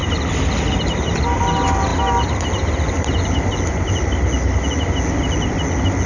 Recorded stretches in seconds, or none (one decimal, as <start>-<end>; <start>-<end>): 0.0-6.1